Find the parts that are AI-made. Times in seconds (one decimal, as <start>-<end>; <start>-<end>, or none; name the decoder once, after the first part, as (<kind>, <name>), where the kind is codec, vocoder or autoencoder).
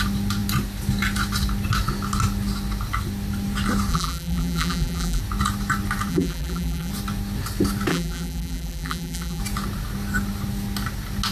3.9-5.2 (vocoder, BigVGAN v2); 6.1-6.9; 7.9-9.4